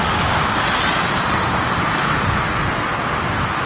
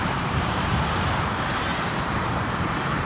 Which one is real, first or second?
first